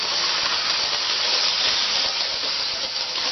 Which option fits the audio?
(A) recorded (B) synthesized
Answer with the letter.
A